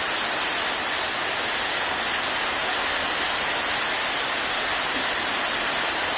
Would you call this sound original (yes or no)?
yes